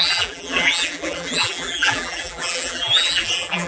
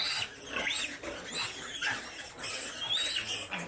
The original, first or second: second